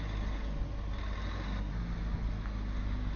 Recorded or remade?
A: recorded